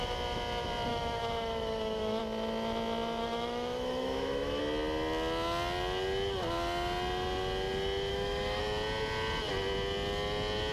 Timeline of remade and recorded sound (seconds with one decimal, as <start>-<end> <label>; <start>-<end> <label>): 0.0-0.9 recorded; 0.9-2.2 remade; 2.2-3.2 recorded; 3.2-4.6 remade; 4.6-8.1 recorded; 8.1-8.6 remade; 8.6-10.7 recorded